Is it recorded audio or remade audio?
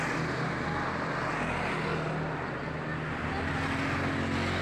recorded